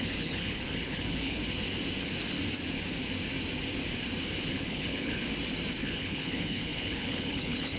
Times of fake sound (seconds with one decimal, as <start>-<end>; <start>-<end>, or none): 0.0-1.4; 4.5-5.2; 5.8-7.8